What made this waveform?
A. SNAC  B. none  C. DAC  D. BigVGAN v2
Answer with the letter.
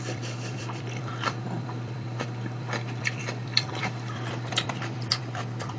D